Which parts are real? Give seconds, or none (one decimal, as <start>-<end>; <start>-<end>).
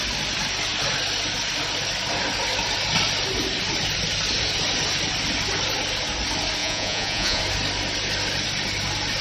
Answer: 0.0-6.6; 7.4-9.2